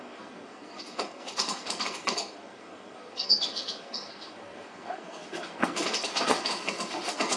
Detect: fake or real fake